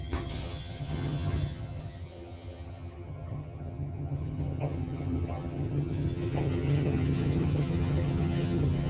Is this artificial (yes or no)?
yes